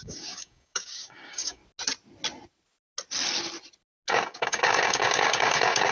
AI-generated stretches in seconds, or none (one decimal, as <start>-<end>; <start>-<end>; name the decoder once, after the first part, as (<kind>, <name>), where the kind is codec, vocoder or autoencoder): 0.0-1.6 (codec, DAC); 4.1-5.9